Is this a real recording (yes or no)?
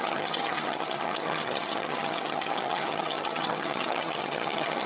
no